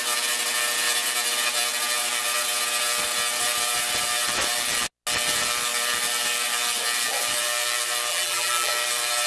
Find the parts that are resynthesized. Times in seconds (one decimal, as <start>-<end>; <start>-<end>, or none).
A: 8.1-8.7